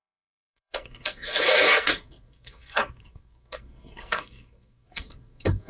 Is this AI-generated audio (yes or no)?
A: yes